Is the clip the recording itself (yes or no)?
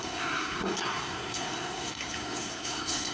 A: no